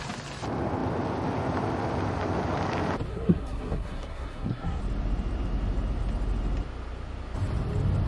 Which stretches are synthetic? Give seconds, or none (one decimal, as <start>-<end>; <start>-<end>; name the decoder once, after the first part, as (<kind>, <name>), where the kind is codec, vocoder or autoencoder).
3.1-4.8 (codec, SNAC)